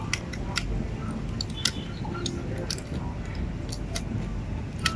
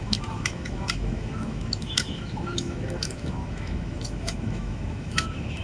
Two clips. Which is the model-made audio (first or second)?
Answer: second